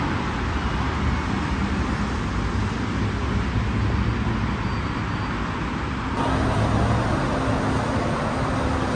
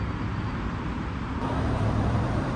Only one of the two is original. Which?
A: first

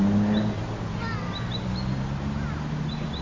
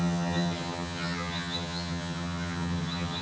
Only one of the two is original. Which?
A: first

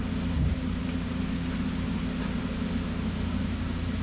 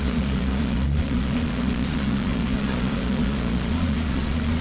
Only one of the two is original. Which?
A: first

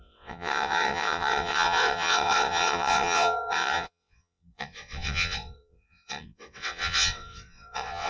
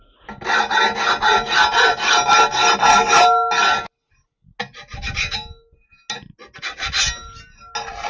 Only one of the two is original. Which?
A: second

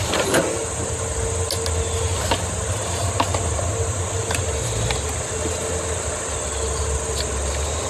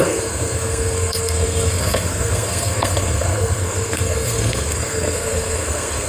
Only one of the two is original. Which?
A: first